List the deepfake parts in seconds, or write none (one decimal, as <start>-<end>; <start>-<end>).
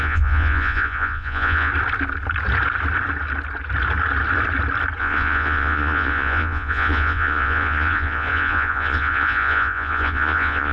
0.0-1.7; 5.0-10.7